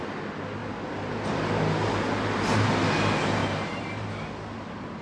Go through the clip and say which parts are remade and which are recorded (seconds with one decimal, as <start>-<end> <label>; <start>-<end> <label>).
0.0-0.6 recorded; 0.6-1.5 remade; 1.5-3.4 recorded; 3.4-4.1 remade; 4.1-5.0 recorded